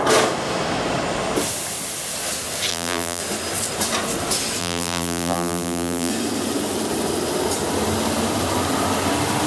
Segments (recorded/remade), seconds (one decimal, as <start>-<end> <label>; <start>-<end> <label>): 0.0-2.7 recorded; 2.7-3.2 remade; 3.2-4.6 recorded; 4.6-6.1 remade; 6.1-9.5 recorded